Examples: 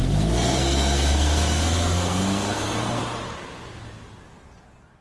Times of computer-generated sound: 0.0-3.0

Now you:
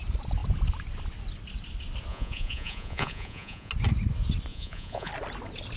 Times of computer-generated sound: 2.1-3.7; 4.5-5.1

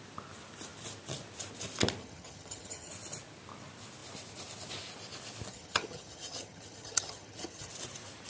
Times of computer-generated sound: 2.0-2.9; 5.5-7.7

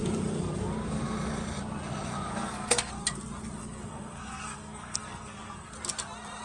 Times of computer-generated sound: 2.3-2.9; 3.6-5.7